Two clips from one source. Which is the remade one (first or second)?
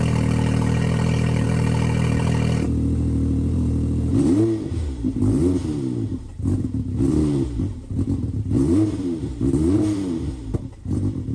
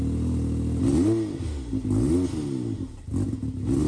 first